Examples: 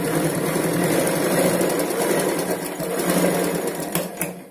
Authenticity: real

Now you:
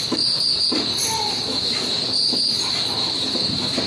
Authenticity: fake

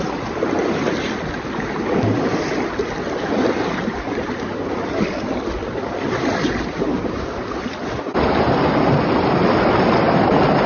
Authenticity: real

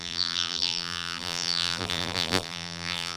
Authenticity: fake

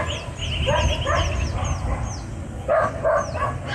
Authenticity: real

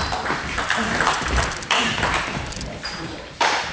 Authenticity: fake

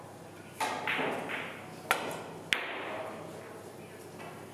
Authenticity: real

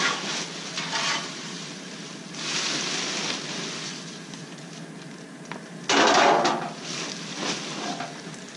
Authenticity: real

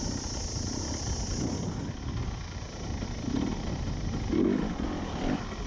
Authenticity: real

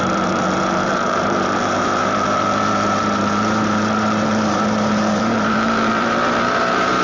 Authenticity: fake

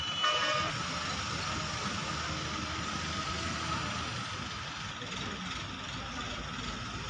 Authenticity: real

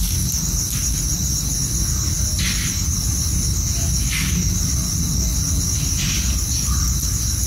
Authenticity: real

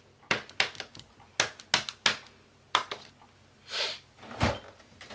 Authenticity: real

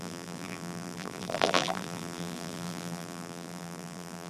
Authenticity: fake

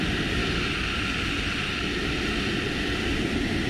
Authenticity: real